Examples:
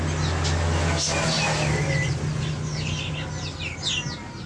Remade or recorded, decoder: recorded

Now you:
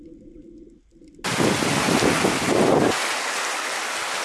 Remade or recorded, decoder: recorded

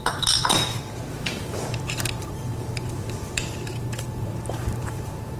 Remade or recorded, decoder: remade, vocoder, BigVGAN v2